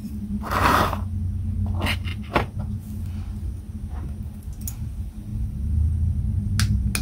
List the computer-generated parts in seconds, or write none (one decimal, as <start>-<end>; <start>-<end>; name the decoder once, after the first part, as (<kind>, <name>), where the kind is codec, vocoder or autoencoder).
0.0-0.5 (vocoder, BigVGAN v2)